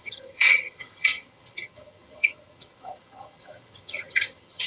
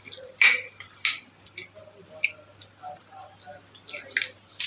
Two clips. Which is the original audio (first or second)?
second